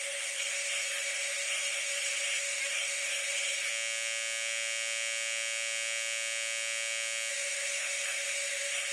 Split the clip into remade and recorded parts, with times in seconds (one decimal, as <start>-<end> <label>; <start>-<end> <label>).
0.0-3.7 remade; 3.7-7.3 recorded; 7.3-8.9 remade